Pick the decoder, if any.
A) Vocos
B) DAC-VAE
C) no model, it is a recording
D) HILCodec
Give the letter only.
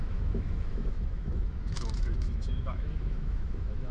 B